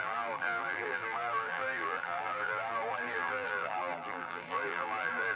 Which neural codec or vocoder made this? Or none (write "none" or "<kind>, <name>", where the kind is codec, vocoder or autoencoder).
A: vocoder, BigVGAN v2